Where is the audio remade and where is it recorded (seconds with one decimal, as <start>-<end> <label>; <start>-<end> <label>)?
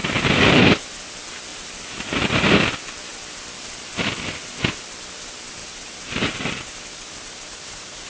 0.0-1.1 remade; 1.1-1.5 recorded; 1.5-2.6 remade; 2.6-5.6 recorded; 5.6-8.1 remade